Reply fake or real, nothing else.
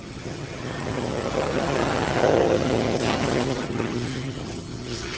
fake